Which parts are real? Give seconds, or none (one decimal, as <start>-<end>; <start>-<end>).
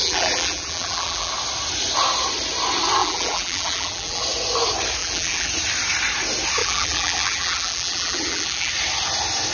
1.3-3.0; 4.2-5.0; 5.5-6.6; 8.7-9.5